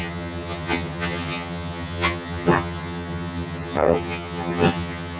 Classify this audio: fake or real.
fake